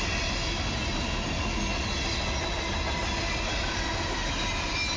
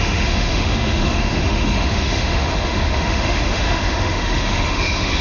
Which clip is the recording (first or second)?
first